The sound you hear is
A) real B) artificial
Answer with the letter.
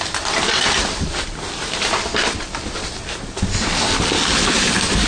A